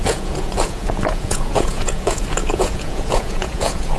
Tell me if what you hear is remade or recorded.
remade